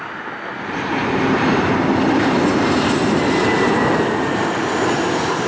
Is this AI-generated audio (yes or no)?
no